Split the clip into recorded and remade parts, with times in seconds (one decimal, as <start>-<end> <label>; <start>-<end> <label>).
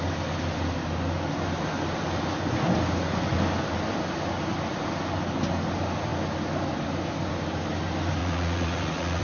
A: 0.0-8.2 recorded; 8.2-9.2 remade